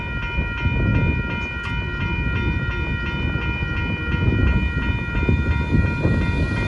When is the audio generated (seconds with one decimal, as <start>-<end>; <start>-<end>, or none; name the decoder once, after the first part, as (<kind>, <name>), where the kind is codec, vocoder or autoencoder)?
none